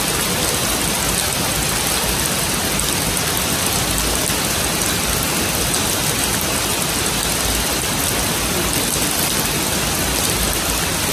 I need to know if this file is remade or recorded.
recorded